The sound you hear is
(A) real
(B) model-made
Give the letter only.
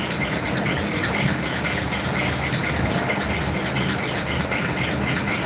A